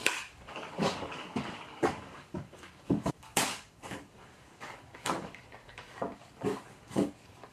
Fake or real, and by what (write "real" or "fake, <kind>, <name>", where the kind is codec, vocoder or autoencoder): fake, codec, DAC